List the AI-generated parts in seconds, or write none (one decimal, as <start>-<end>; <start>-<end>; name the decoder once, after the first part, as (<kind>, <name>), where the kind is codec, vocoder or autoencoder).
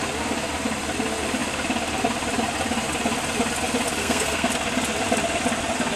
4.0-4.5 (codec, SNAC)